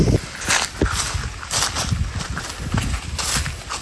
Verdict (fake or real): real